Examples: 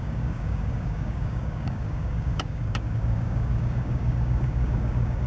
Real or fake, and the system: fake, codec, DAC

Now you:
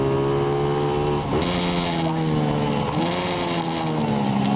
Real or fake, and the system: real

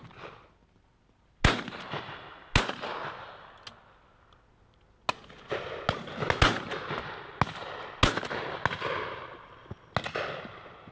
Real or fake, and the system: real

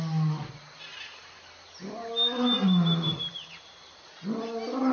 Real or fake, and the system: real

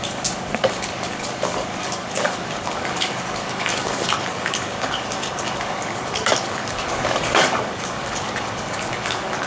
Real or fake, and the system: fake, codec, DAC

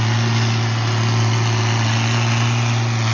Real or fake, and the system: real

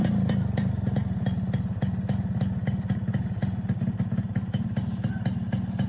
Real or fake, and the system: real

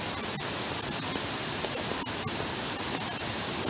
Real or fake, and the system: real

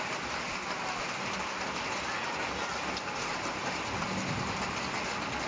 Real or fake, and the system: real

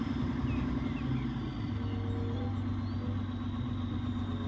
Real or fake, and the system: real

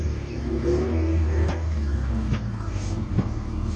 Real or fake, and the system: fake, codec, DAC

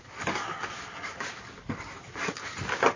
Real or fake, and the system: fake, codec, DAC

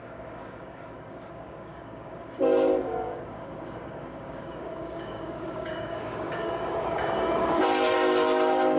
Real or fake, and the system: fake, codec, DAC